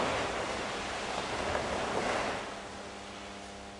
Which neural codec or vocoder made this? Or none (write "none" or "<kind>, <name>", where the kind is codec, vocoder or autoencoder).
none